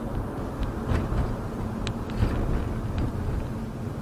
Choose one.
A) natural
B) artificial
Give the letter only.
A